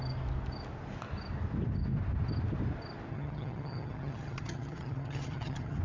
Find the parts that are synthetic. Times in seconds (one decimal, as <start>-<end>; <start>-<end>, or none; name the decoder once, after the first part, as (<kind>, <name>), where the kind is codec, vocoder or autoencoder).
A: 3.1-5.8 (vocoder, HiFi-GAN)